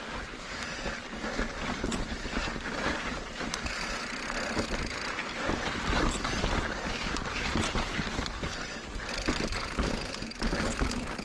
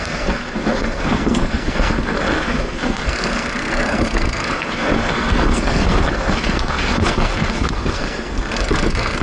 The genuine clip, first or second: first